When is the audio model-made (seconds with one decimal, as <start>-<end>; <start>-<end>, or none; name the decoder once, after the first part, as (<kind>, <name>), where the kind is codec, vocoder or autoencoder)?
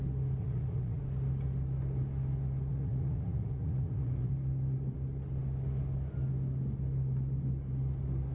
0.4-1.0 (vocoder, Vocos); 2.7-4.3